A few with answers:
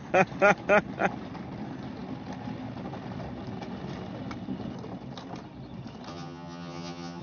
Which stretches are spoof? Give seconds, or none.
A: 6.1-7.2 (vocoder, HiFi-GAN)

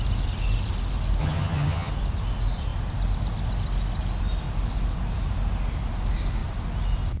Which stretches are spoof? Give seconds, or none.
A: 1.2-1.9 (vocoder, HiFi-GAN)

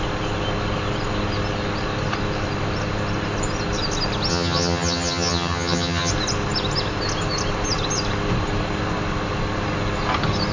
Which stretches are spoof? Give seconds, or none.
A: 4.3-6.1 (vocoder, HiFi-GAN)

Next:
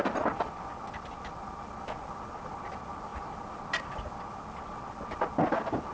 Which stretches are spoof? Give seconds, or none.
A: none

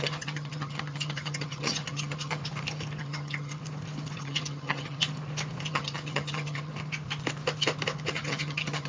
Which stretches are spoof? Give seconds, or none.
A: 0.0-2.4 (vocoder, HiFi-GAN); 3.0-3.6; 4.2-5.0; 5.7-6.7; 8.1-8.9

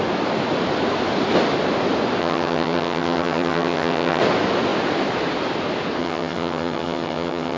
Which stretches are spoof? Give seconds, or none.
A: 2.2-4.2 (vocoder, HiFi-GAN); 6.0-7.6